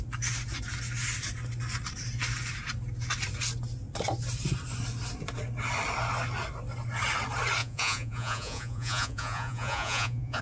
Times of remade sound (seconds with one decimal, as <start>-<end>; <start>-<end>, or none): 7.6-10.4